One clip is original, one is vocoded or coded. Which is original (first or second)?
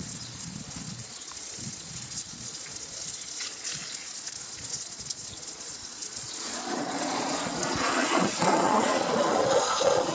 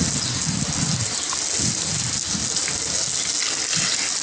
second